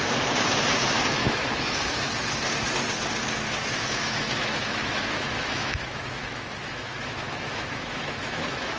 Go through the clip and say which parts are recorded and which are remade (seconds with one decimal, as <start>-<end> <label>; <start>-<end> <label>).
0.0-1.2 recorded; 1.2-2.1 remade; 2.1-3.7 recorded; 3.7-8.8 remade